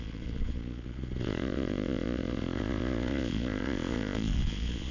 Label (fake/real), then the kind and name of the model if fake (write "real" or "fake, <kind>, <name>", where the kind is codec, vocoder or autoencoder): fake, vocoder, Vocos